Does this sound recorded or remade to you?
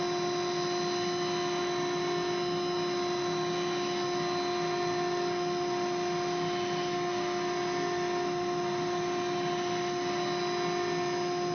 recorded